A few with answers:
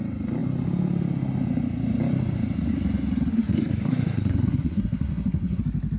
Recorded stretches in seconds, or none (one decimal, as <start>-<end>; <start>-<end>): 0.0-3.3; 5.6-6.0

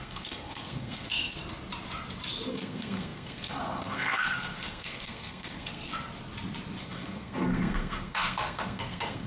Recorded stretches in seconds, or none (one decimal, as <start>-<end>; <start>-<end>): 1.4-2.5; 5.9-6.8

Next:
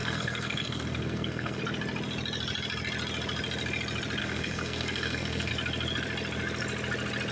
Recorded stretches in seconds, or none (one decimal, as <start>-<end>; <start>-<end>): 1.6-4.2; 5.5-7.3

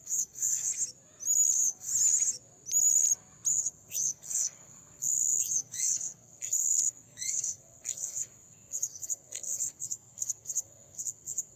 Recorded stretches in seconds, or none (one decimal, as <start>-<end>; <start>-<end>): 0.7-1.5; 1.9-3.5